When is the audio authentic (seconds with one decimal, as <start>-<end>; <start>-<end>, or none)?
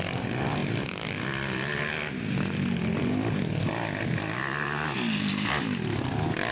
0.0-6.5